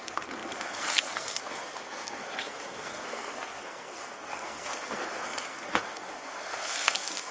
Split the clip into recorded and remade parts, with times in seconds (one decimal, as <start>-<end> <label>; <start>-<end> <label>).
0.0-7.3 remade